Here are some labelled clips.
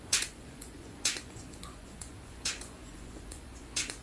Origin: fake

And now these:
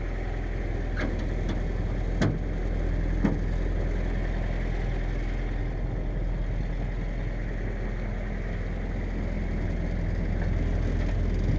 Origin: real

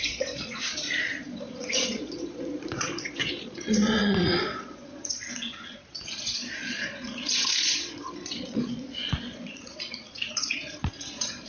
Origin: fake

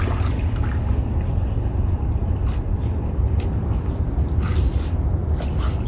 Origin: real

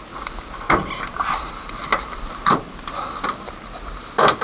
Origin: real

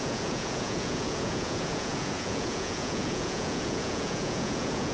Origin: fake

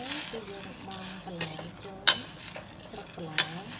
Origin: real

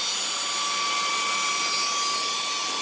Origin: real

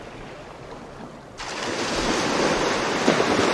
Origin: real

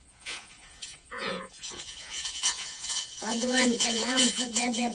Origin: fake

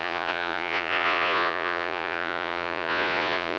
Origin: fake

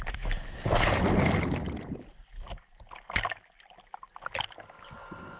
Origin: real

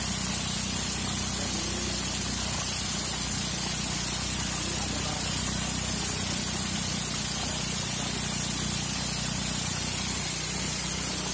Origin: real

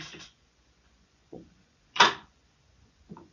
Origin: fake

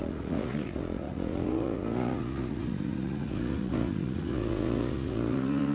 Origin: fake